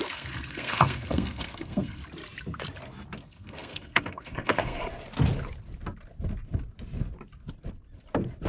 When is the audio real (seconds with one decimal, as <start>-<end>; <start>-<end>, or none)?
2.0-3.2; 4.8-8.5